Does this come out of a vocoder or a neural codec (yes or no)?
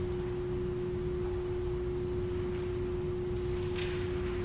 no